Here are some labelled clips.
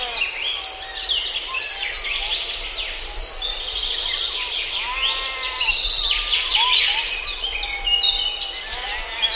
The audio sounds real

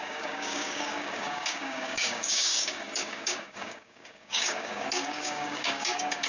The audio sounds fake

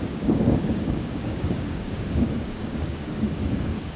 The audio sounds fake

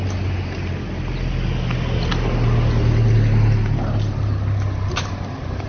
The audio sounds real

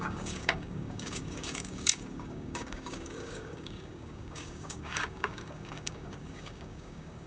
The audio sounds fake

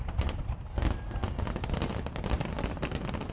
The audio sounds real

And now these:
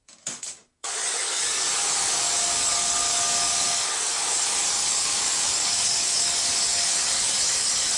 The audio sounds fake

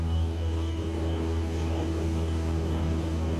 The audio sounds fake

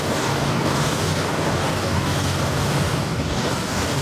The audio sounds fake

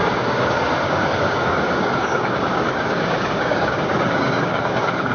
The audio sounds fake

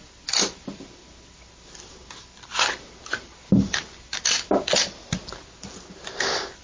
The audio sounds real